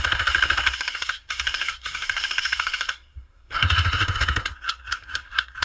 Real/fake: fake